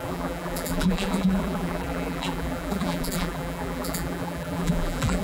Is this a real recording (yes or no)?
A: no